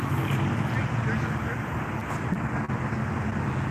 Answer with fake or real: real